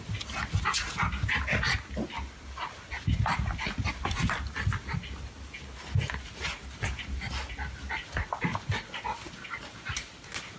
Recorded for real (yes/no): yes